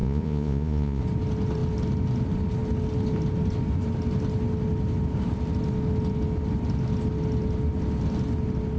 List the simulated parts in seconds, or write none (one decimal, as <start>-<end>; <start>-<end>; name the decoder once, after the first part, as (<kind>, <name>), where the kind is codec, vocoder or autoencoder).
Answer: 0.0-1.0 (vocoder, Vocos)